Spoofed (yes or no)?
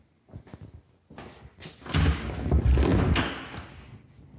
no